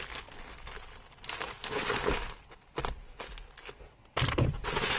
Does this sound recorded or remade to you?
recorded